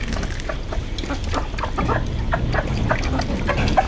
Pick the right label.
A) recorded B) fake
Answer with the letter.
A